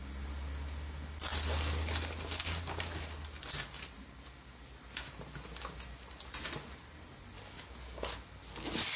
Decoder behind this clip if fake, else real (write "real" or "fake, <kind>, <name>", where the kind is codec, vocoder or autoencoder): real